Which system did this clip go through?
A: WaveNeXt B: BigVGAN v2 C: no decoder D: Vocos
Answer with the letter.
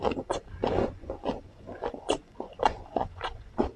D